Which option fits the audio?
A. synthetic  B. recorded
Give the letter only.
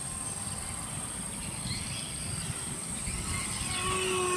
B